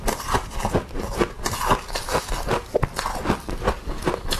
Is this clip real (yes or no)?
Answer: yes